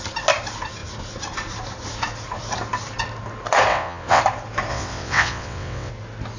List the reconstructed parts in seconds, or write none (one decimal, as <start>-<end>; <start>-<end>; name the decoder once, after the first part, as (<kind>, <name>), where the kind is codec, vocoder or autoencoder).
3.7-4.2 (vocoder, WaveNeXt); 4.7-5.9